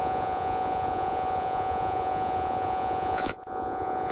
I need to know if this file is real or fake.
fake